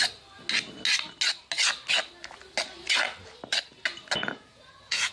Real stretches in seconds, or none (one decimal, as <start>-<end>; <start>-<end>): 0.0-4.2